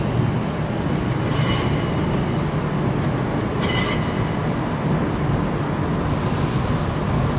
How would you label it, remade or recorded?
recorded